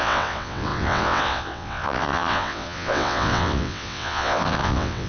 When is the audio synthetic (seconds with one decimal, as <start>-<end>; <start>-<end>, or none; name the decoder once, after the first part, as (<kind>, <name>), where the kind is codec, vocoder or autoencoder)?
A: 0.0-5.1 (vocoder, WaveNeXt)